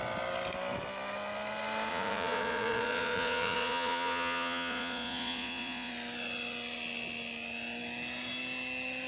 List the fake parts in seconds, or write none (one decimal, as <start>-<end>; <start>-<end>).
1.9-5.9